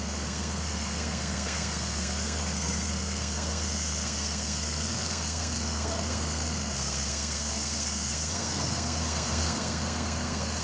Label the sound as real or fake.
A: fake